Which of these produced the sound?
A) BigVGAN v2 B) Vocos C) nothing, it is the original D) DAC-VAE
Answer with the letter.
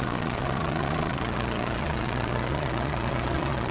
B